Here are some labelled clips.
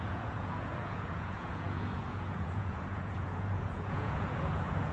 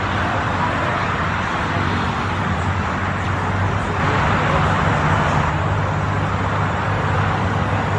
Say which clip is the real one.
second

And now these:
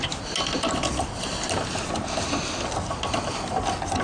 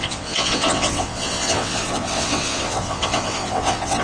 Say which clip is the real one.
first